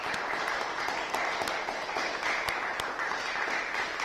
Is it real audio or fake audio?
fake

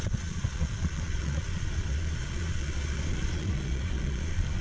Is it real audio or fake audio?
fake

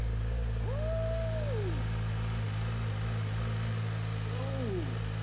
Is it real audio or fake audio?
real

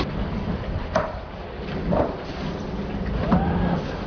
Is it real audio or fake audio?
real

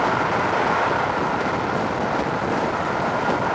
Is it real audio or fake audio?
real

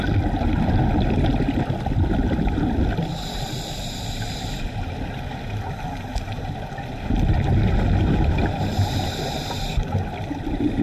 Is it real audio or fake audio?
real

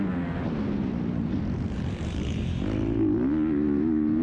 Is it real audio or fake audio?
real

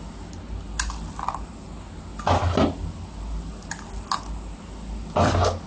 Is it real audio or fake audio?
real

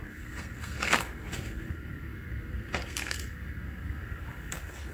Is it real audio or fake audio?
fake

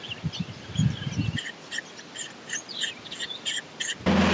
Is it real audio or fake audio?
real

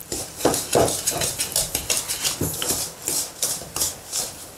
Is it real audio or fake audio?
real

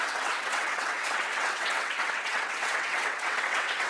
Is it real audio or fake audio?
fake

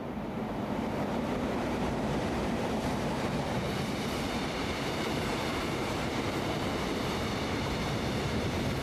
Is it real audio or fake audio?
fake